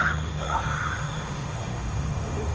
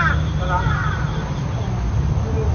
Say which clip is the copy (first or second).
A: first